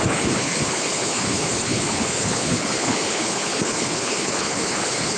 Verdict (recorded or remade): remade